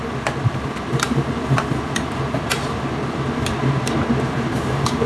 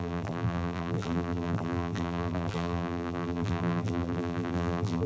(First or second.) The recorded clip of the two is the first